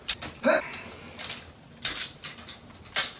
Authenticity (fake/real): real